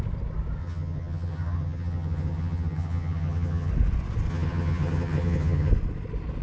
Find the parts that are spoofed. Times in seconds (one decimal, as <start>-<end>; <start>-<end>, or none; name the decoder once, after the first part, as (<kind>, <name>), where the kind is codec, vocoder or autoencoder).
0.6-3.7 (vocoder, HiFi-GAN); 4.3-5.7